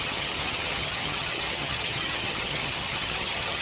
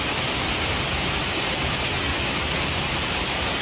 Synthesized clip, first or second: first